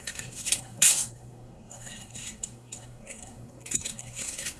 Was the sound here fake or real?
fake